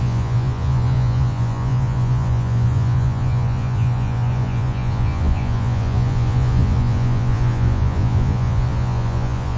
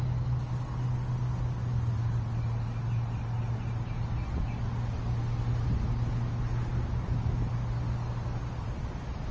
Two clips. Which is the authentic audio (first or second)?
second